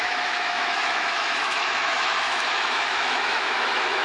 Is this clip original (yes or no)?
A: no